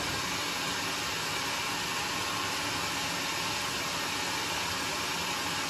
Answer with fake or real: real